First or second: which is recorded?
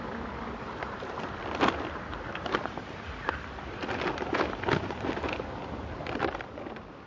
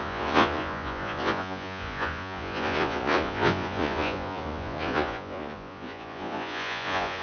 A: first